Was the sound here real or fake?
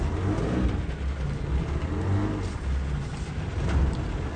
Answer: real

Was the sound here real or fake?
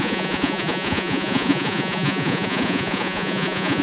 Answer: fake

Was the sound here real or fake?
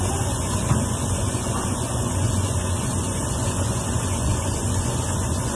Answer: fake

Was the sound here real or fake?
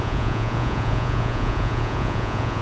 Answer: fake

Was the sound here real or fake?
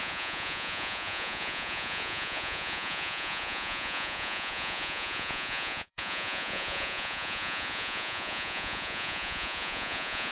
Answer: fake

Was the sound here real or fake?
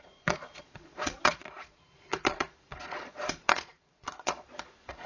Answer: fake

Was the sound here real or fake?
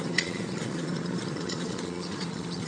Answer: fake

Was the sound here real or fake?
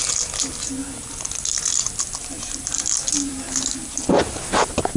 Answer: real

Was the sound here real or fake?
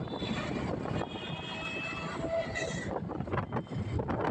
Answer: real